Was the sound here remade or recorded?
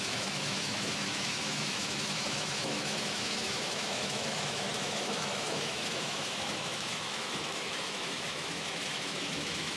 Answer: remade